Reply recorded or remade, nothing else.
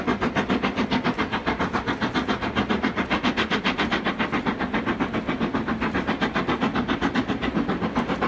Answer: recorded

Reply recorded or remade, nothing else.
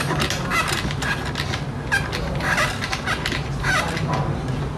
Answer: recorded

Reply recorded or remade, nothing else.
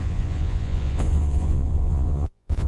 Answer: remade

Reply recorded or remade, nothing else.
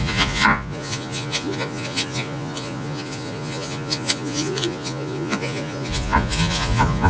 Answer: remade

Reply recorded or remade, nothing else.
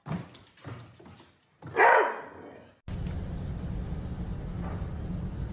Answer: recorded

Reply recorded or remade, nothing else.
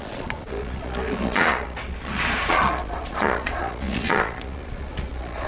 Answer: remade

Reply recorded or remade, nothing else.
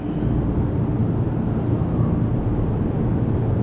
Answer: recorded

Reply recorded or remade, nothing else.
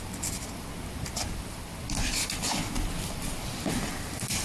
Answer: recorded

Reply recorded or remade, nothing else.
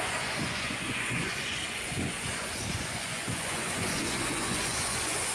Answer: remade